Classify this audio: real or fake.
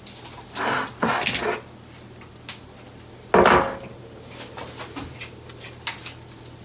real